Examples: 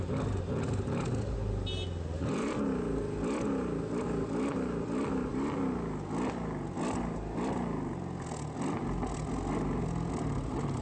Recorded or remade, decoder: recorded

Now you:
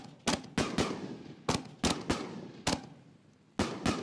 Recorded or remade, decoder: recorded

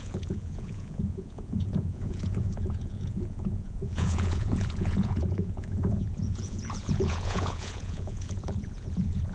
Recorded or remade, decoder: remade, vocoder, Vocos